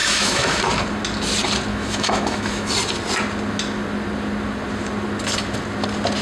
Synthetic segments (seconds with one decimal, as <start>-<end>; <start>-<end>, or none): 0.0-0.6; 1.7-2.7